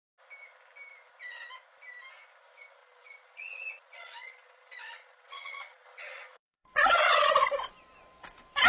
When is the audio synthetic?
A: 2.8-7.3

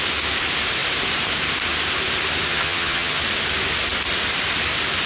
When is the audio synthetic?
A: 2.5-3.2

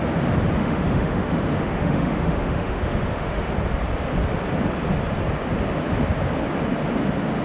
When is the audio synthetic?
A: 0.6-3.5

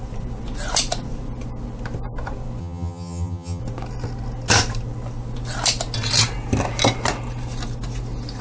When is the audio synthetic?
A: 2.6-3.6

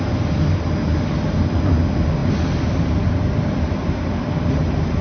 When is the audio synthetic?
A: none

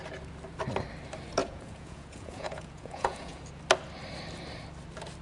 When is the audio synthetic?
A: 1.4-3.4

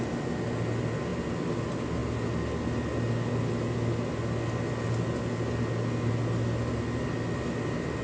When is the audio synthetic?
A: none